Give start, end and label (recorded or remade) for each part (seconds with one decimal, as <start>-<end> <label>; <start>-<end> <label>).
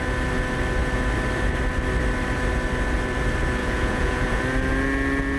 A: 0.0-3.6 recorded; 3.6-4.4 remade; 4.4-5.4 recorded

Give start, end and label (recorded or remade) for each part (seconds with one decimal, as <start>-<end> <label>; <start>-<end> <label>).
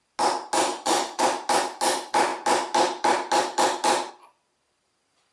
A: 0.0-0.7 recorded; 0.7-1.2 remade; 1.2-5.3 recorded